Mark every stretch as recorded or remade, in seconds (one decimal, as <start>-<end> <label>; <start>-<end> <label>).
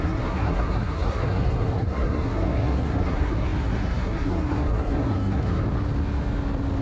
0.0-5.6 remade; 5.6-6.8 recorded